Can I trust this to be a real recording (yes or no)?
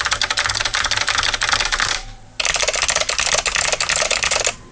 yes